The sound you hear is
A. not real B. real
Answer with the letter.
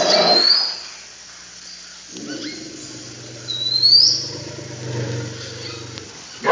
B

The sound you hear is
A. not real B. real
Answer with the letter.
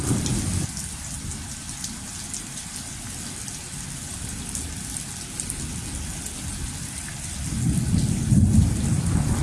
B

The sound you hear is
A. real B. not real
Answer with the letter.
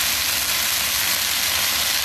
A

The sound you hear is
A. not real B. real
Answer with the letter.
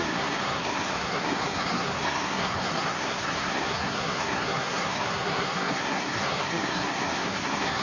A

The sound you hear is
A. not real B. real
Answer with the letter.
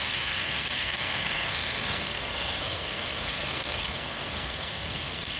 A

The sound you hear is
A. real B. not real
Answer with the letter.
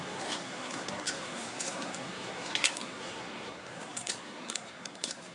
B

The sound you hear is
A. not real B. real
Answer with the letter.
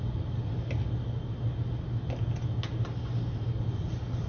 B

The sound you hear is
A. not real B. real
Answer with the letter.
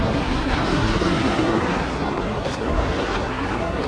A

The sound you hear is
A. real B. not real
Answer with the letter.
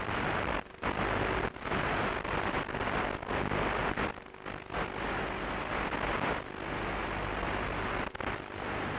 A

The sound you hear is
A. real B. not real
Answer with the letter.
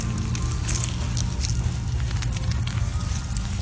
A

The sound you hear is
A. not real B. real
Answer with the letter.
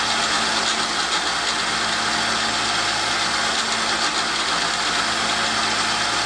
B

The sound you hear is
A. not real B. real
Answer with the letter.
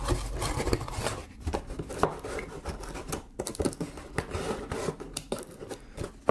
B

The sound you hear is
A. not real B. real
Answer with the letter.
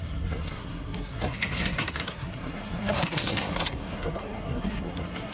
A